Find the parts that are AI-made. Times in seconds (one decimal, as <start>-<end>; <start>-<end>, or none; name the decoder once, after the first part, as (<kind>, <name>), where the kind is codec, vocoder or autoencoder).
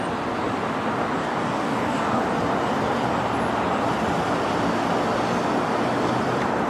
1.2-2.2 (codec, DAC)